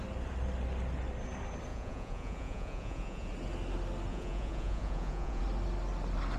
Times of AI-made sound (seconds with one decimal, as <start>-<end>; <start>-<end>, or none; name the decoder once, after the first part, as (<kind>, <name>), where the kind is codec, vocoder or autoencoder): 1.7-3.3 (vocoder, Vocos); 4.1-5.4